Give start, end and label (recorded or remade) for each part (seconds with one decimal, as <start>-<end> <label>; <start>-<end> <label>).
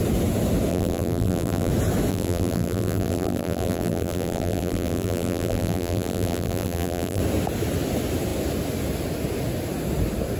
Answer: 0.0-0.7 recorded; 0.7-1.7 remade; 1.7-2.1 recorded; 2.1-7.2 remade; 7.2-10.4 recorded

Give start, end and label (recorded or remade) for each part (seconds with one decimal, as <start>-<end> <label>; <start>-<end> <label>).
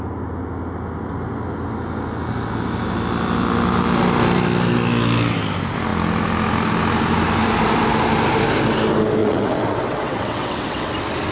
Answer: 0.0-9.2 recorded; 9.2-10.9 remade; 10.9-11.3 recorded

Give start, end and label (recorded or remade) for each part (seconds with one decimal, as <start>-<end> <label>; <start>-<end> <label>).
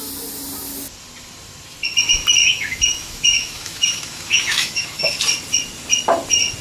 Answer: 0.0-2.4 recorded; 2.4-5.0 remade; 5.0-6.6 recorded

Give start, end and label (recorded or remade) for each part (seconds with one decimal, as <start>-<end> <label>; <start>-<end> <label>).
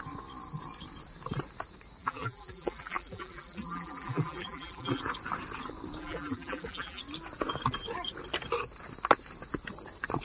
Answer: 0.0-2.0 recorded; 2.0-5.0 remade; 5.0-6.0 recorded; 6.0-7.0 remade; 7.0-10.2 recorded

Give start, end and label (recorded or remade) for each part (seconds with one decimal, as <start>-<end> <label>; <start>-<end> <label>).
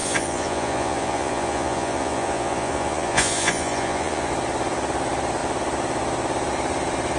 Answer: 0.0-4.3 remade; 4.3-7.2 recorded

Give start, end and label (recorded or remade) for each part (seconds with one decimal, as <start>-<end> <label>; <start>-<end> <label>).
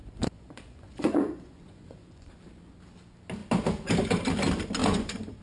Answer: 0.0-2.3 remade; 2.3-4.8 recorded; 4.8-5.4 remade